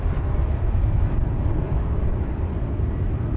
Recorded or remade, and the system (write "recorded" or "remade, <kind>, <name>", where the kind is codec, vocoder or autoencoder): recorded